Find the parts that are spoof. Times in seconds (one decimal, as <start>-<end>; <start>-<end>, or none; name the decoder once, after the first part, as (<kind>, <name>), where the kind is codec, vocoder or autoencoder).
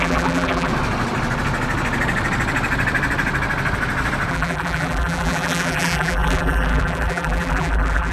0.0-0.7 (vocoder, BigVGAN v2); 4.3-8.1